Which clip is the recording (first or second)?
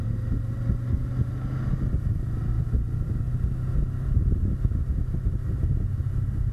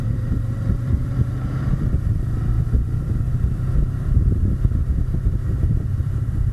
first